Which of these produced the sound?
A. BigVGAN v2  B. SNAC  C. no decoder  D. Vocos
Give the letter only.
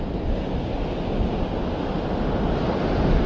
C